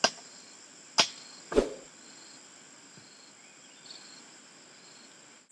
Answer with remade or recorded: recorded